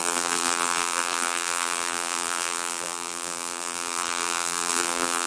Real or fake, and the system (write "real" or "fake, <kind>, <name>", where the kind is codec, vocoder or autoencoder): fake, vocoder, BigVGAN v2